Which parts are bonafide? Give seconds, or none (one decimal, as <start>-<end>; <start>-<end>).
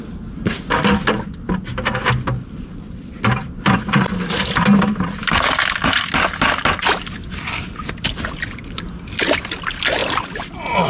0.0-10.9